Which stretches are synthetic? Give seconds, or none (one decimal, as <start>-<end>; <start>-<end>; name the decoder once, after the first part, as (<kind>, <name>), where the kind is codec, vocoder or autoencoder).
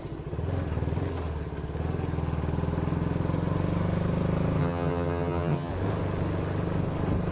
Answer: 4.6-5.7 (vocoder, HiFi-GAN)